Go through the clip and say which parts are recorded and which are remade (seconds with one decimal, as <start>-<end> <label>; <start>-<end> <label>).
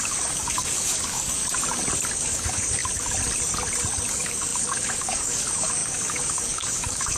0.0-1.4 remade; 1.4-2.1 recorded; 2.1-2.8 remade; 2.8-4.1 recorded; 4.1-7.2 remade